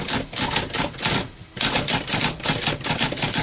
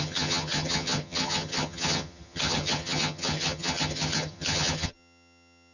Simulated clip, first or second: second